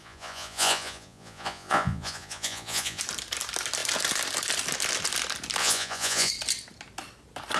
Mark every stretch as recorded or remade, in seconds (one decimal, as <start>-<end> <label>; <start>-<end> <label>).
0.0-3.0 remade; 3.0-5.6 recorded; 5.6-6.3 remade; 6.3-7.6 recorded